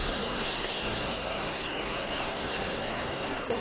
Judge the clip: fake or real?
fake